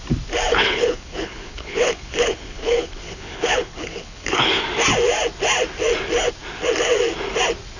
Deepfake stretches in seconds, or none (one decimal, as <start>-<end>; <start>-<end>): 0.5-4.6

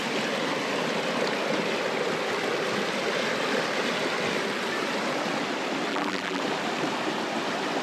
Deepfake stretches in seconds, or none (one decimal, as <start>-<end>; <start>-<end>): 5.9-6.4